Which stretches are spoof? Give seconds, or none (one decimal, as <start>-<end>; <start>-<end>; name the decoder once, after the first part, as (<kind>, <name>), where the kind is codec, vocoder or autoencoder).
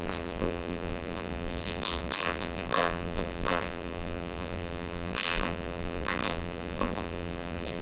0.0-7.8 (vocoder, BigVGAN v2)